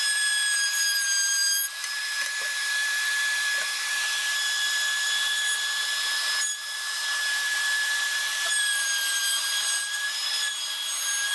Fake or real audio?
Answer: fake